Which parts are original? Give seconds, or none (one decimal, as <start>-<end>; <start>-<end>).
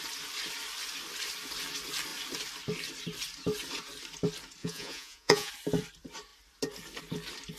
0.0-4.6; 5.5-7.6